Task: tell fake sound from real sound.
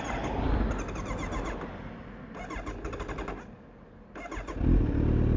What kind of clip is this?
real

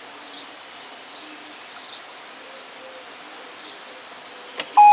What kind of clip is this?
real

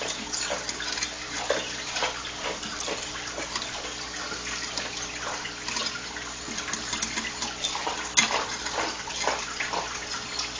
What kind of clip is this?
real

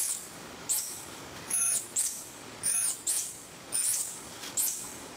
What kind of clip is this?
fake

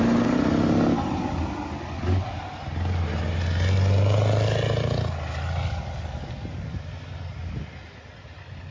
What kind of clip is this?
real